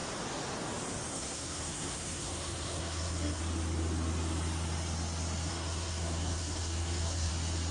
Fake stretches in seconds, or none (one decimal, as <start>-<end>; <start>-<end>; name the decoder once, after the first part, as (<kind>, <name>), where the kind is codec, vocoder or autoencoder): 1.1-3.4 (codec, SNAC); 5.5-7.3